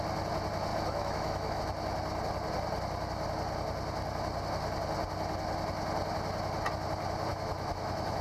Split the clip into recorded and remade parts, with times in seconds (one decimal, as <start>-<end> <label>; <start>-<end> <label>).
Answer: 0.0-0.7 recorded; 0.7-1.6 remade; 1.6-7.3 recorded; 7.3-8.2 remade